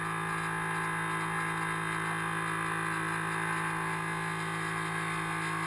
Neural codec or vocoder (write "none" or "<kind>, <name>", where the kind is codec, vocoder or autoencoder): none